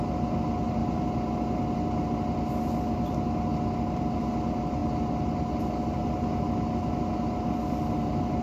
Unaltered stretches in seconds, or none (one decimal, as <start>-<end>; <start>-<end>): 0.0-8.4